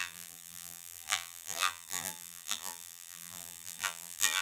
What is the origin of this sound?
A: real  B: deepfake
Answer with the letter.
B